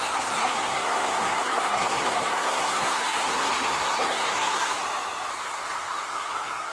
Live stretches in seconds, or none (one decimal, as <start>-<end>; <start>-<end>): 4.8-5.3